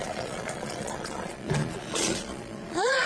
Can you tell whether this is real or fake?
fake